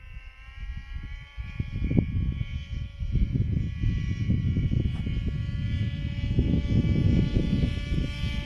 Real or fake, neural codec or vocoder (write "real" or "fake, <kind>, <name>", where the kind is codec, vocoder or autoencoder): real